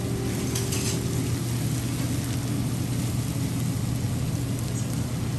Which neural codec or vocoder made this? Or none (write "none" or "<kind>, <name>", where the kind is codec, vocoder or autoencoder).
none